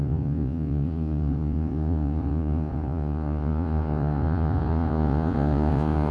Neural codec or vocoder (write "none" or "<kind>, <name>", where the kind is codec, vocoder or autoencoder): vocoder, Vocos